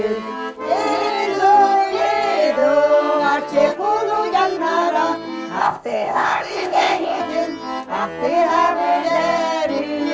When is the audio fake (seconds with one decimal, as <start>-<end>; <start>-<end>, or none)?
5.6-7.2

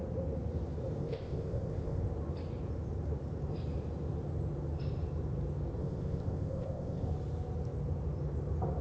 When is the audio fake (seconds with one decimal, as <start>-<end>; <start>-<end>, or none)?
1.0-2.0; 5.8-7.1

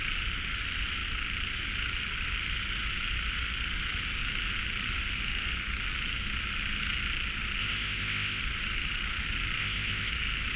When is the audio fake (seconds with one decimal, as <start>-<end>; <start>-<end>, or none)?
7.6-8.4; 9.6-10.1

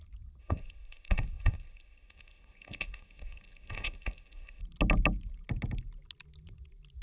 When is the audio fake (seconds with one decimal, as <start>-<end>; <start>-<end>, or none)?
0.4-4.6

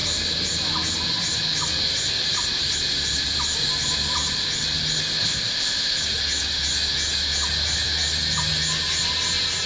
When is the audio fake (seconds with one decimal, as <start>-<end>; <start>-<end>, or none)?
5.2-6.0